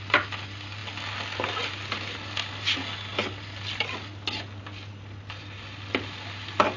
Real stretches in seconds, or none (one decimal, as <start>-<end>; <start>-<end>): 0.0-6.8